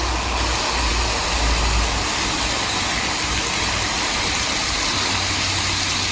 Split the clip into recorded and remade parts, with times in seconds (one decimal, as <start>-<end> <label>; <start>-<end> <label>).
0.0-6.1 recorded